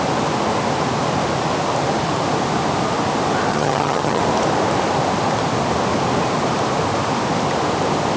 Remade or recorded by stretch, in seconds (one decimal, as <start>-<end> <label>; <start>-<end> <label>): 0.0-3.5 recorded; 3.5-4.2 remade; 4.2-8.2 recorded